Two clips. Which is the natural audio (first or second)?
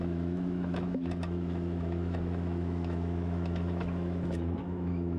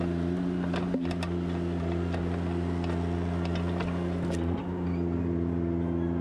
second